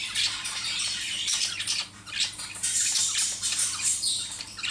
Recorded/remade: remade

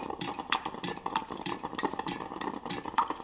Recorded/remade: remade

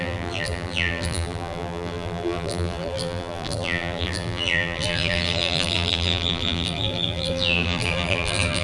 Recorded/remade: remade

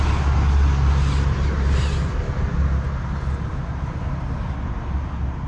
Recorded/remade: recorded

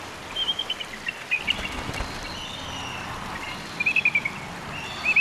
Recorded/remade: recorded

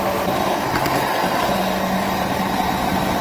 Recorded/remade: recorded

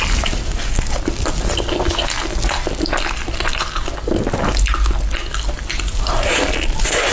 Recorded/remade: recorded